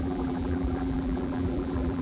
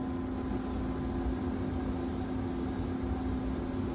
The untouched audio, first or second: second